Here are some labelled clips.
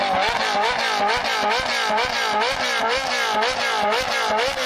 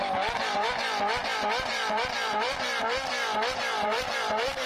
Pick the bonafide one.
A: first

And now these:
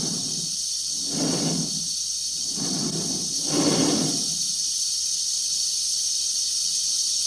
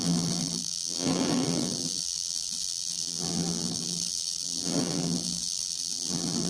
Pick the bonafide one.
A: first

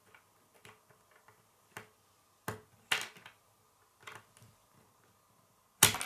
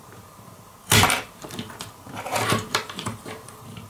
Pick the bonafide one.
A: first